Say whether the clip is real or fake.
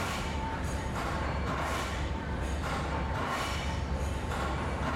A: fake